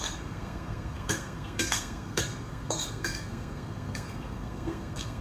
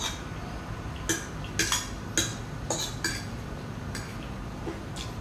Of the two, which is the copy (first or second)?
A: first